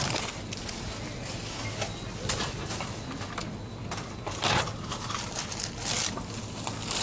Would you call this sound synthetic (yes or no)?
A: no